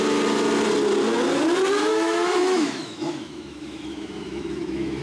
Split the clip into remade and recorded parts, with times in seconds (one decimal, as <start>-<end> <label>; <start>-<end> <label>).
0.0-1.9 recorded; 1.9-5.0 remade